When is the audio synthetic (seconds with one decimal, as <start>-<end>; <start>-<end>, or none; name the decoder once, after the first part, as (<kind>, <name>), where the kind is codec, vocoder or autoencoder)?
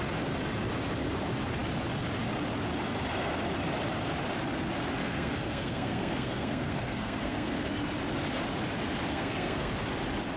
5.0-7.7 (codec, SNAC); 9.1-9.7